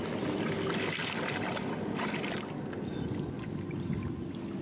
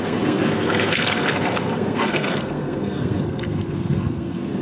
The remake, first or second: second